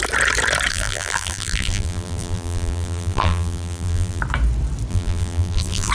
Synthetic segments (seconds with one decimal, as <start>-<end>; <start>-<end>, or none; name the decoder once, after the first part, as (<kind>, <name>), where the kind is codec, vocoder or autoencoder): 0.7-4.2 (vocoder, BigVGAN v2); 4.9-5.9